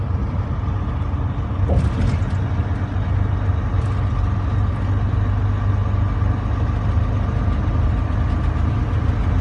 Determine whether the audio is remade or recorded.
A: recorded